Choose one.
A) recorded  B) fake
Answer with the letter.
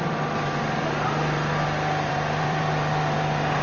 B